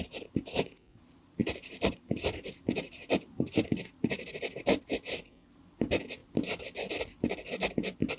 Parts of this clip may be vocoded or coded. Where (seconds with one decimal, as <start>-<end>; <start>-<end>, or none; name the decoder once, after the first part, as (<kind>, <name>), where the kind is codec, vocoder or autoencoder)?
1.4-4.9 (vocoder, BigVGAN v2)